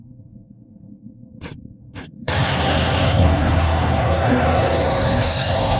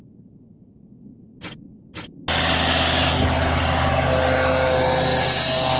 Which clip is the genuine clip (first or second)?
second